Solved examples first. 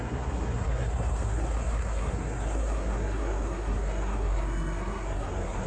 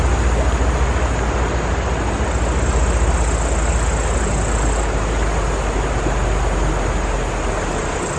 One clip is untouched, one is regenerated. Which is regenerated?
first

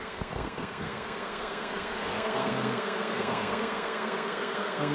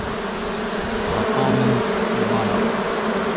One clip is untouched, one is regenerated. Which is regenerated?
first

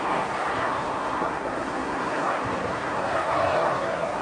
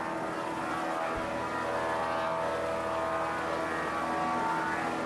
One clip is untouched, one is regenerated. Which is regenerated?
first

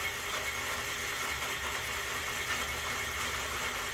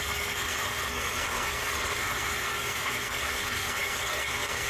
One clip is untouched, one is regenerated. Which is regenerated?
second